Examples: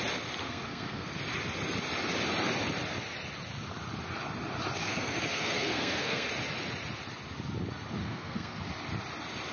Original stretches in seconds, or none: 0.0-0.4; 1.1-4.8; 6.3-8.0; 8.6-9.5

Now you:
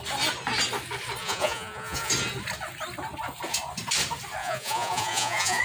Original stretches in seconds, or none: 0.0-1.2; 2.1-4.4

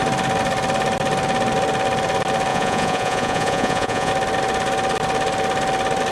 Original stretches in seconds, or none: 0.0-2.5; 4.1-6.1